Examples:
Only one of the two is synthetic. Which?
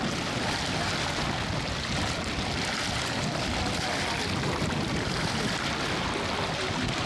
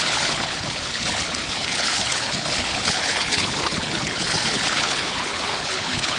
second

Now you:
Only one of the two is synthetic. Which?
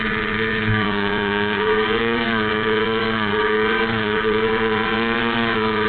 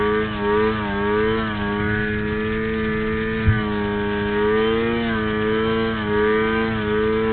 first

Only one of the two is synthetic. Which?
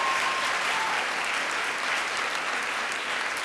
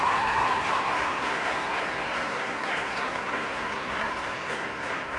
second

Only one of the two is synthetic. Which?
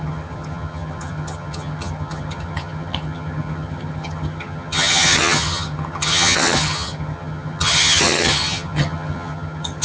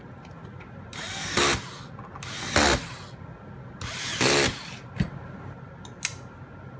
first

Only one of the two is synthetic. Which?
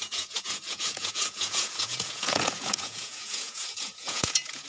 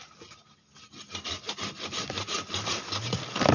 first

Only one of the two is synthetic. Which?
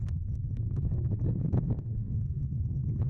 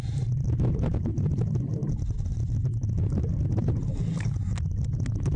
first